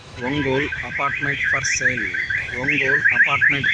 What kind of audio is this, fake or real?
fake